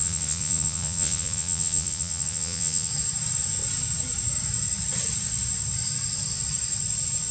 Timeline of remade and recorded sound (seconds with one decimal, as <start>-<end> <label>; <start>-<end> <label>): 0.0-2.9 remade; 2.9-7.3 recorded

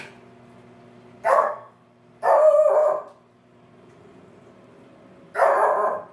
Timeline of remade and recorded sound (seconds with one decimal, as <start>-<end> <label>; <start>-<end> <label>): 0.0-1.3 recorded; 1.3-1.8 remade; 1.8-6.1 recorded

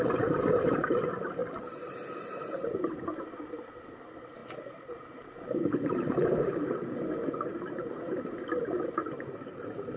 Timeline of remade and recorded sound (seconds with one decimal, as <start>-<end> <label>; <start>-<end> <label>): 0.0-10.0 remade

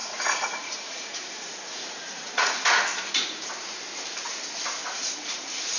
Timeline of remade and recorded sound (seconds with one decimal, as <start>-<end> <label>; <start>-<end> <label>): 0.0-3.5 remade; 3.5-4.8 recorded; 4.8-5.8 remade

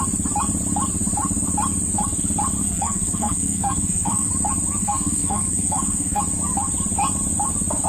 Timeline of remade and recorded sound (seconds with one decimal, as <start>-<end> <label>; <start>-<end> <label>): 0.0-2.6 recorded; 2.6-4.3 remade; 4.3-4.8 recorded; 4.8-6.2 remade; 6.2-7.9 recorded

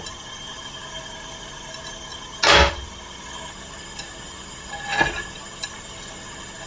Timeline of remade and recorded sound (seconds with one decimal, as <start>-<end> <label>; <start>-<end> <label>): 0.0-6.7 recorded

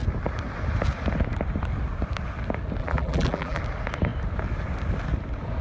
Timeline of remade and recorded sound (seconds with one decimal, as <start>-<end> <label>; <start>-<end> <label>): 0.0-2.8 recorded; 2.8-3.6 remade; 3.6-5.6 recorded